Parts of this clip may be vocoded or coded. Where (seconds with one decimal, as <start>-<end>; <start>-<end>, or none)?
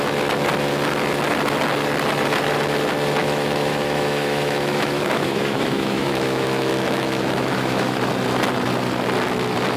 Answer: 3.2-8.0